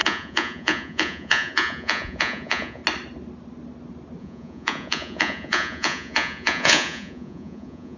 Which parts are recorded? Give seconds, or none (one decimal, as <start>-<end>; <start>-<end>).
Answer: 2.8-4.2